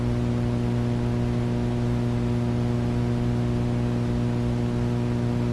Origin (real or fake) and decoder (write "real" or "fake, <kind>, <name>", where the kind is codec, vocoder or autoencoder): real